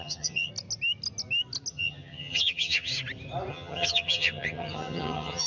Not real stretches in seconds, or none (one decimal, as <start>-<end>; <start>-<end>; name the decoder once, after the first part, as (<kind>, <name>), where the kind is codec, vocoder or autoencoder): 0.0-0.5 (vocoder, HiFi-GAN); 1.7-2.9; 3.5-5.5